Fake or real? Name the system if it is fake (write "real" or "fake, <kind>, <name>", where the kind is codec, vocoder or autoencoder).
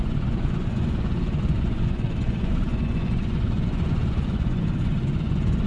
fake, vocoder, Vocos